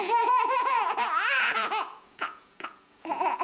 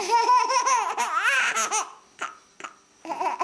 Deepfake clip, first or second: first